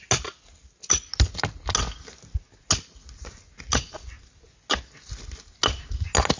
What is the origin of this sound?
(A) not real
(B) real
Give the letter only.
B